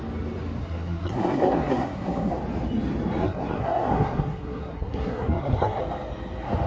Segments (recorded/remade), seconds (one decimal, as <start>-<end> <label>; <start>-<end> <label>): 0.0-0.6 recorded; 0.6-2.3 remade; 2.3-3.2 recorded; 3.2-5.8 remade; 5.8-6.7 recorded